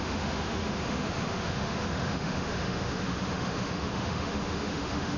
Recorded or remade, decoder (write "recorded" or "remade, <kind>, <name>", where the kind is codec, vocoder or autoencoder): remade, autoencoder, DAC-VAE